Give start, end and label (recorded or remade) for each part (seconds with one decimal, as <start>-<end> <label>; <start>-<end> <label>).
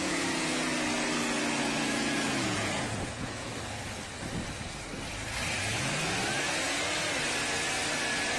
0.0-0.7 remade; 0.7-1.6 recorded; 1.6-3.5 remade; 3.5-8.4 recorded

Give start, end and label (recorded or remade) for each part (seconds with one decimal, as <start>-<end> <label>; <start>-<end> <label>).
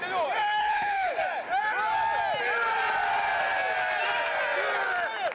0.0-0.6 recorded; 0.6-1.1 remade; 1.1-5.3 recorded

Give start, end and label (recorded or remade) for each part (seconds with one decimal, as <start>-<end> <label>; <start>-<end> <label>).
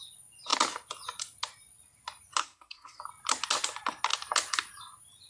0.0-2.4 recorded; 2.4-3.0 remade; 3.0-5.3 recorded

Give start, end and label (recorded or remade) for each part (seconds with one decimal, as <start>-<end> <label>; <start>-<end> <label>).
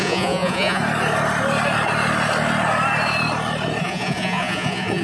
0.0-0.8 remade; 0.8-3.8 recorded; 3.8-5.0 remade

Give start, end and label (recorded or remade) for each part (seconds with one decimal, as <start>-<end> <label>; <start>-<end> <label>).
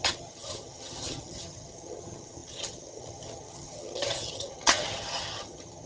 0.0-5.9 remade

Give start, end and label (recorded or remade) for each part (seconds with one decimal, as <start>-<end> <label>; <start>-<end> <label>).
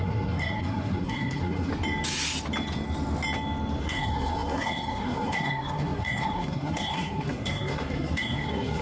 0.0-1.7 remade; 1.7-3.8 recorded; 3.8-8.8 remade